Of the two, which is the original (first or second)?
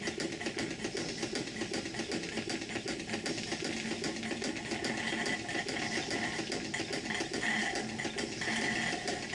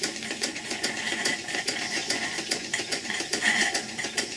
first